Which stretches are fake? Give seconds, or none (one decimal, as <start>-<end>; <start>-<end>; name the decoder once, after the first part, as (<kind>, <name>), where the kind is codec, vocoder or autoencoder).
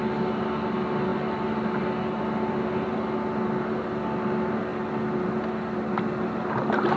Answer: none